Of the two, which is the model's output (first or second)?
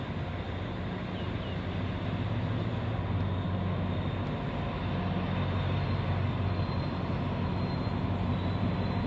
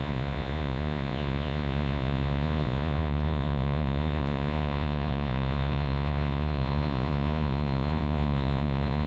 second